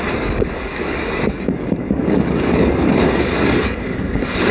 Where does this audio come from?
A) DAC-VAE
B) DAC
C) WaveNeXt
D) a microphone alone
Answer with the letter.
B